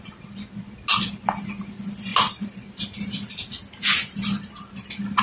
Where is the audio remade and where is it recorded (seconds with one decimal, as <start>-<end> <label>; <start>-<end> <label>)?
0.0-5.2 recorded